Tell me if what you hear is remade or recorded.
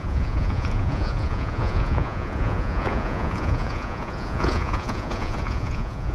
remade